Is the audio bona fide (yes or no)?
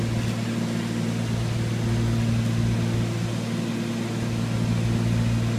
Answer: yes